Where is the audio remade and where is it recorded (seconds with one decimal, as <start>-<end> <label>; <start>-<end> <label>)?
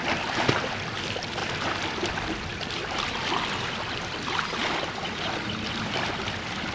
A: 0.0-1.4 recorded; 1.4-2.1 remade; 2.1-4.6 recorded; 4.6-6.7 remade